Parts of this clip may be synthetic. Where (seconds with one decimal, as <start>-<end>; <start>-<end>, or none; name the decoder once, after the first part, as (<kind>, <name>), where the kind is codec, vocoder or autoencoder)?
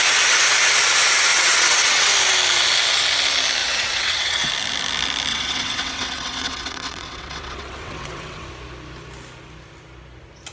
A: 1.3-2.1 (vocoder, WaveNeXt); 3.6-4.5; 5.3-8.5